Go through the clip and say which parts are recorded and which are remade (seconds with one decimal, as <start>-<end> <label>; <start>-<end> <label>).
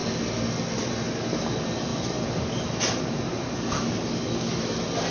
0.0-5.1 recorded